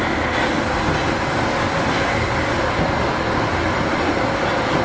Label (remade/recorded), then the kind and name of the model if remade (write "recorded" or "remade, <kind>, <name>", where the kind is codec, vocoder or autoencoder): recorded